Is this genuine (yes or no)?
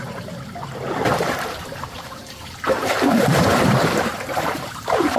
no